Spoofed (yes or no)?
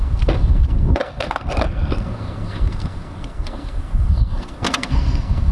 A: yes